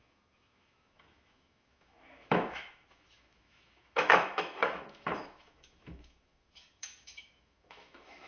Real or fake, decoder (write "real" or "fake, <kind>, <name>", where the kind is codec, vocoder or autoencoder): fake, autoencoder, DAC-VAE